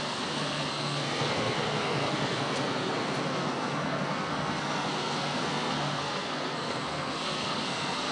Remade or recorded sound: remade